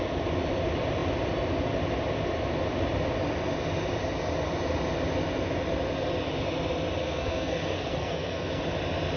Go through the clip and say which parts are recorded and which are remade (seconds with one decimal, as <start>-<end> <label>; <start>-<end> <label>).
0.0-7.0 recorded; 7.0-8.6 remade; 8.6-9.2 recorded

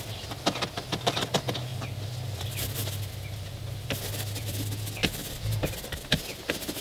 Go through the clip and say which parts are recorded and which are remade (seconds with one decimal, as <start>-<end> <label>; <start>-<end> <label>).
0.0-6.8 recorded

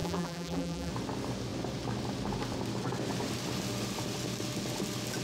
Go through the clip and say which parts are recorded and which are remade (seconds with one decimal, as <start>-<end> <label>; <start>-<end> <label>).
0.0-0.9 remade; 0.9-5.2 recorded